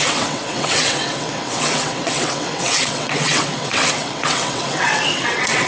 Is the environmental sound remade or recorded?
remade